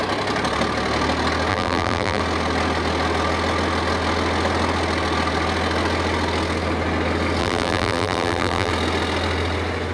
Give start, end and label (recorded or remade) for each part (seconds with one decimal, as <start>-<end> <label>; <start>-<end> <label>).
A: 0.0-1.5 recorded; 1.5-2.2 remade; 2.2-7.4 recorded; 7.4-8.7 remade; 8.7-9.9 recorded